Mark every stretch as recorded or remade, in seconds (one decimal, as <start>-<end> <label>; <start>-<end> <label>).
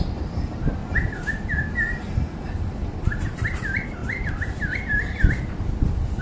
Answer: 0.0-0.8 remade; 0.8-2.7 recorded; 2.7-6.2 remade